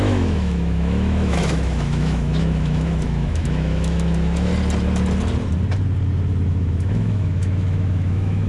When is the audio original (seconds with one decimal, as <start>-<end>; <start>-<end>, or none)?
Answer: 4.5-6.5